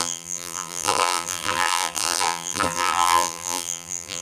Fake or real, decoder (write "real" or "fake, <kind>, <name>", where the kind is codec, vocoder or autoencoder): fake, vocoder, BigVGAN v2